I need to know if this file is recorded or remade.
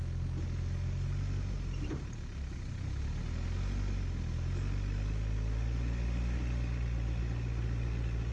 recorded